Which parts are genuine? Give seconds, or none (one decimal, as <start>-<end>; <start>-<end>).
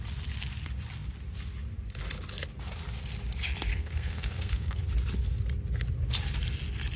0.0-3.7; 4.8-7.0